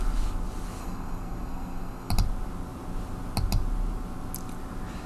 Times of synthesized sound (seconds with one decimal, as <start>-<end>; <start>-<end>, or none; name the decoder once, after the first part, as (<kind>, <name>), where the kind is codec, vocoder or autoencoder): 0.8-2.1 (codec, SNAC)